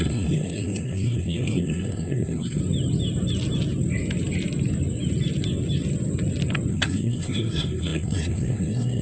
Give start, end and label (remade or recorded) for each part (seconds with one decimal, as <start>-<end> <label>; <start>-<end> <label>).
0.0-2.6 remade; 2.6-6.7 recorded; 6.7-9.0 remade